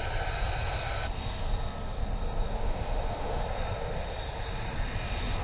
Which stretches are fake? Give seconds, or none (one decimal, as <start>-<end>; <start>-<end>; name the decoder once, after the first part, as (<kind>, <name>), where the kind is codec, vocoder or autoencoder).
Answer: 2.6-3.4 (autoencoder, DAC-VAE)